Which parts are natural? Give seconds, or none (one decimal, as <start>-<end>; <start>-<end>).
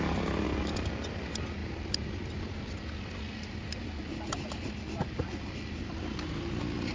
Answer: 0.0-6.9